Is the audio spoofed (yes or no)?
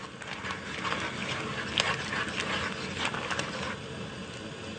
no